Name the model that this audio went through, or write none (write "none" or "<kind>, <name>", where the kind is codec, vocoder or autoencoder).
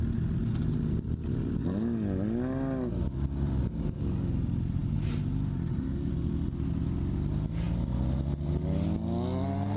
none